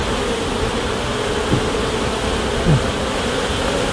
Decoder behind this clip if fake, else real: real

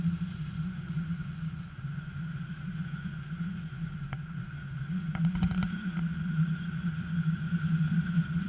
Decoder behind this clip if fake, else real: fake, vocoder, Vocos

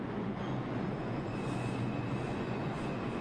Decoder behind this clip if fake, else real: fake, vocoder, Vocos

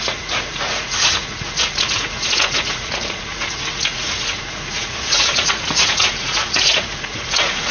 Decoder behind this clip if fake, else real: fake, vocoder, Vocos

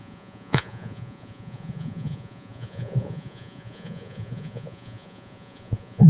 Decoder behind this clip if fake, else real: fake, vocoder, Vocos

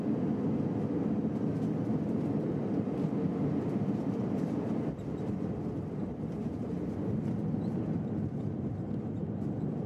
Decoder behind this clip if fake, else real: real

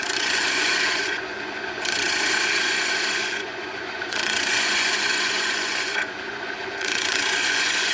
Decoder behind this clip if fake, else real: fake, vocoder, Vocos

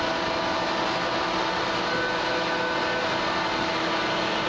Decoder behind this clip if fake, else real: real